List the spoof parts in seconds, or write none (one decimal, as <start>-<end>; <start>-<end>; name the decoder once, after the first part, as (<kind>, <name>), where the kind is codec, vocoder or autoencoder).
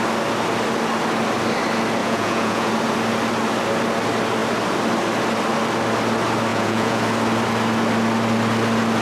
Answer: 2.0-2.7 (vocoder, Vocos); 6.5-7.0